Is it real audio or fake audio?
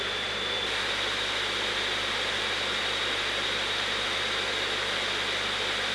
real